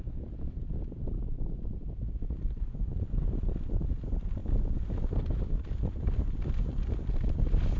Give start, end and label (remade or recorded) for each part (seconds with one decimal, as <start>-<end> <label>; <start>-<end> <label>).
0.0-4.4 remade; 4.4-5.4 recorded; 5.4-7.8 remade